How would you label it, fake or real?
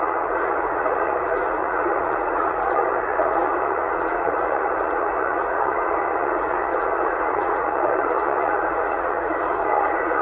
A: fake